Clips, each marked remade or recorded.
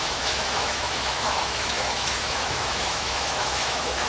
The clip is remade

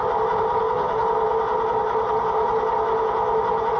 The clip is recorded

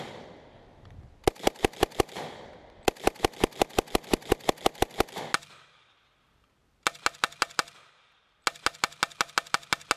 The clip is recorded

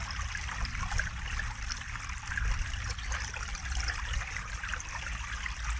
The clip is recorded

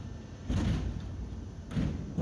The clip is recorded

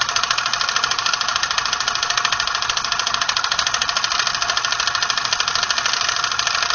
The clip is recorded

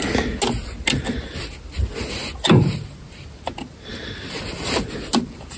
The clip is recorded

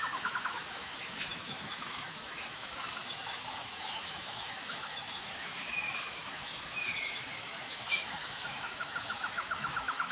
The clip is remade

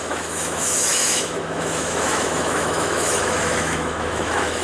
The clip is remade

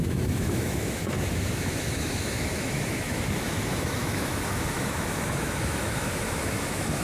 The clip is remade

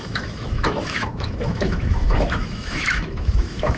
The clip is remade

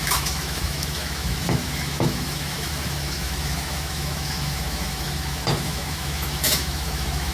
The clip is remade